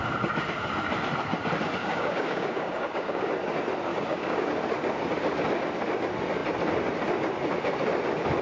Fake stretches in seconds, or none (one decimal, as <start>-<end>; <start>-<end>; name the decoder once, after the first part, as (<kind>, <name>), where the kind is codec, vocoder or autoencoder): 1.8-3.3 (codec, DAC); 3.9-4.5